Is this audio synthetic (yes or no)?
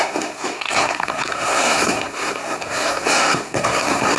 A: yes